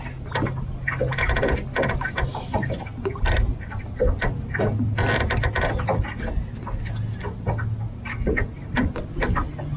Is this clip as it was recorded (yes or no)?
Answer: yes